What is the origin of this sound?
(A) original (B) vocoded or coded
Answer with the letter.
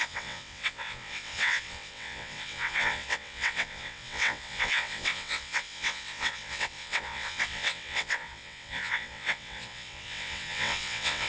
B